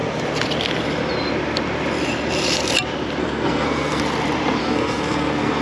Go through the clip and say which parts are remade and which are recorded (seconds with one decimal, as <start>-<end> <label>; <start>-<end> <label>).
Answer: 0.0-3.2 recorded; 3.2-4.0 remade; 4.0-4.6 recorded; 4.6-5.6 remade